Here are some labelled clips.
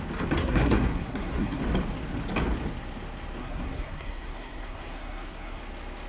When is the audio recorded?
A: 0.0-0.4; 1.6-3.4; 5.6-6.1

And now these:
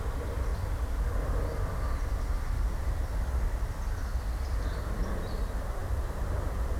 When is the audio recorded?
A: 0.0-6.8

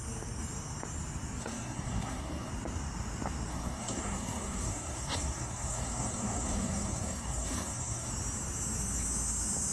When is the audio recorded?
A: 0.0-1.4; 2.5-3.5; 8.1-9.7

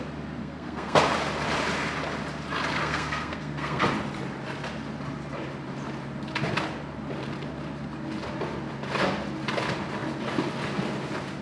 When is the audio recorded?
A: 0.0-0.4; 1.0-2.8; 3.8-11.4

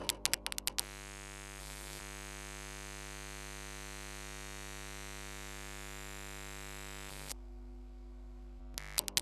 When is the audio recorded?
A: 0.0-1.6; 2.0-7.1; 8.6-9.2

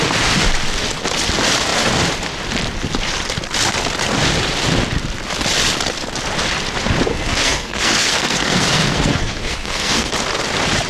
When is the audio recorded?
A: 0.0-7.1; 10.1-10.9